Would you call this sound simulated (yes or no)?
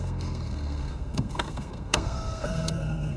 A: yes